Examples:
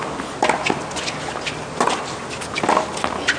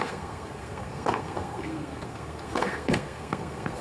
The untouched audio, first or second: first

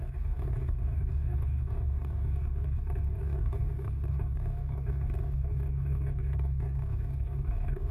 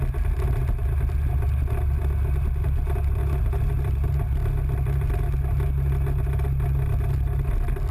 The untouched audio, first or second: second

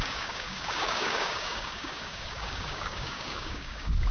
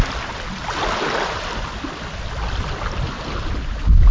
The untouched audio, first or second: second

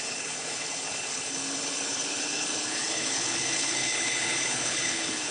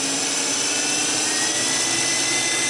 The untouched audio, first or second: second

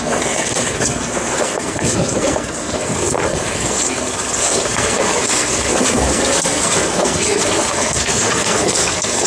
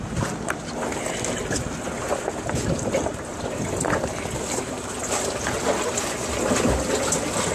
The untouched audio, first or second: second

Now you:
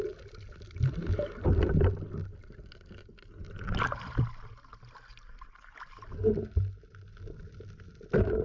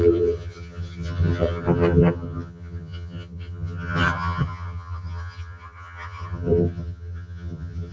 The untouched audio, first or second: first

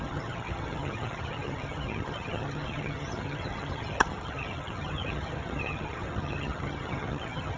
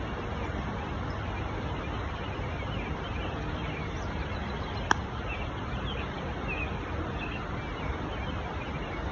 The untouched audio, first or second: second